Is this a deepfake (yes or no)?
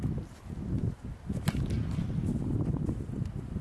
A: no